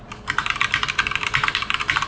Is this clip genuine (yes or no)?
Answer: yes